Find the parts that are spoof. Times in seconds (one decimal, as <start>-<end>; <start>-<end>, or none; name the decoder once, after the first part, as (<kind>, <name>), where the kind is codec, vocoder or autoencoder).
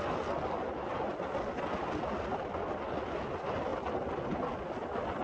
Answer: none